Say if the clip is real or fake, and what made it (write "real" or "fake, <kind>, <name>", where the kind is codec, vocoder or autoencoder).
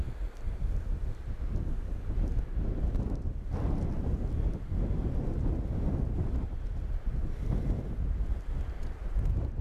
real